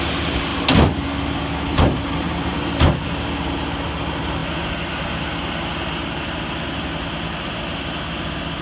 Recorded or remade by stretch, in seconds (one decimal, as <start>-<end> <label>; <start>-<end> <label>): 0.0-1.7 recorded; 1.7-3.0 remade; 3.0-8.6 recorded